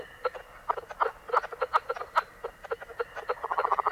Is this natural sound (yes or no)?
yes